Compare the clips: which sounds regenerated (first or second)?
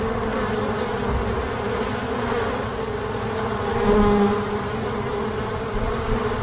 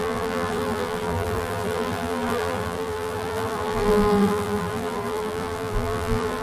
second